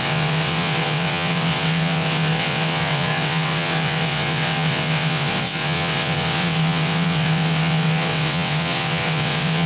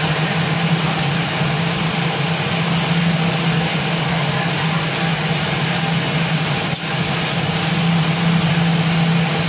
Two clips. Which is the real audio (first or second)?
second